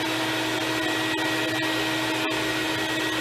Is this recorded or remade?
recorded